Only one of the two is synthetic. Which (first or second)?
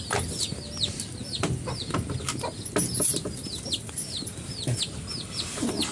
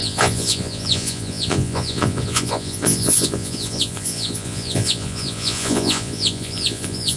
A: second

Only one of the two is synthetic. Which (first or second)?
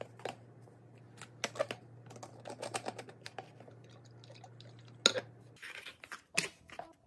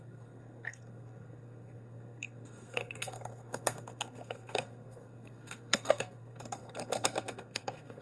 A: second